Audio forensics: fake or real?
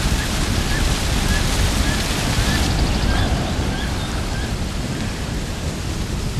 real